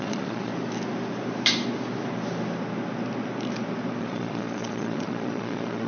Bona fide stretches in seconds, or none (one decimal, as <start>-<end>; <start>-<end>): 0.5-4.0